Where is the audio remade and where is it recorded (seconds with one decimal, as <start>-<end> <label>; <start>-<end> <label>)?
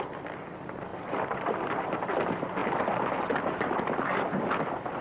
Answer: 0.0-0.9 recorded; 0.9-2.1 remade; 2.1-5.0 recorded